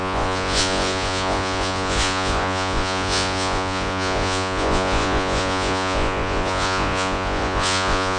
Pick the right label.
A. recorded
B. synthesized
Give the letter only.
B